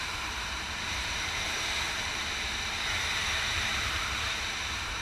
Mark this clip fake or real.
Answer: fake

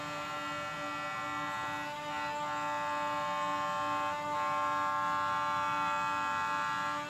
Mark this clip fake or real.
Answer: real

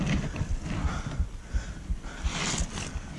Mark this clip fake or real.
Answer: real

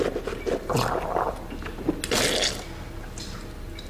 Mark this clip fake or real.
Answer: real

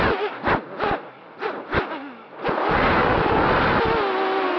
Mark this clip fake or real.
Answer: real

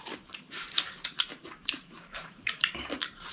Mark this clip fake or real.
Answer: fake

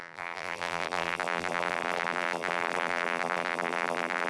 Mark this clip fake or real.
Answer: fake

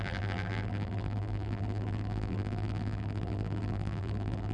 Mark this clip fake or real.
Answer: fake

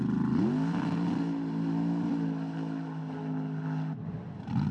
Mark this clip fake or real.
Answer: real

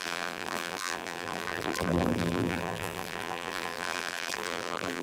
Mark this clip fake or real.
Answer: fake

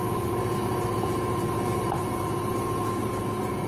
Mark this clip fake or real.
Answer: fake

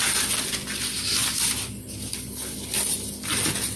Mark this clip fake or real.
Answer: real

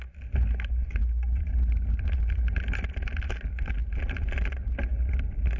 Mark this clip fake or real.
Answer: real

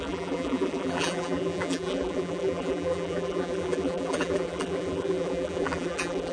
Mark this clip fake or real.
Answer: fake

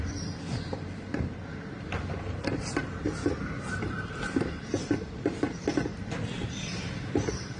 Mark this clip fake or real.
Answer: fake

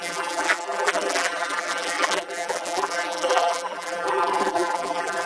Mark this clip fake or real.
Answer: fake